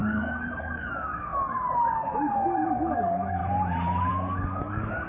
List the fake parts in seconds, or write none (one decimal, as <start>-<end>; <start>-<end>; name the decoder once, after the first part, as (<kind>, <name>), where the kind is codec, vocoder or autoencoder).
0.0-1.3 (codec, DAC); 1.9-3.4; 4.1-5.1